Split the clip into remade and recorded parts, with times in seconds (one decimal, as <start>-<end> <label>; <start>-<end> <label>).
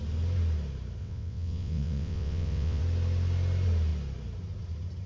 0.0-1.0 recorded; 1.0-2.8 remade; 2.8-5.1 recorded